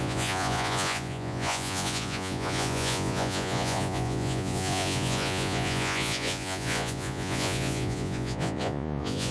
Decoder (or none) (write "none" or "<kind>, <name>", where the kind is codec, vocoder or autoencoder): vocoder, Vocos